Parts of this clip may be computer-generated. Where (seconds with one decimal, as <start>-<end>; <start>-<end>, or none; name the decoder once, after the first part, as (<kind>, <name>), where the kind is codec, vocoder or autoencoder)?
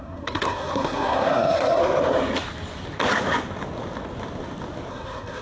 0.0-1.8 (codec, SNAC); 4.9-5.4